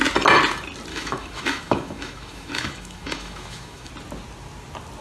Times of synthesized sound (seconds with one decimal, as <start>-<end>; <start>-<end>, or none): 0.9-3.9